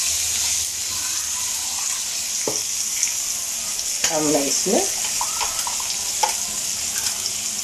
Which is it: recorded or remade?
recorded